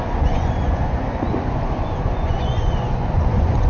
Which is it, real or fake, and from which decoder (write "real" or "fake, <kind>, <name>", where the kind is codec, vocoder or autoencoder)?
fake, vocoder, Vocos